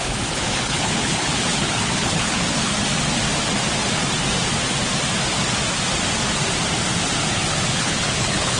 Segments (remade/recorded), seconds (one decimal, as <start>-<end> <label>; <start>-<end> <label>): 0.0-2.7 remade; 2.7-7.7 recorded; 7.7-8.6 remade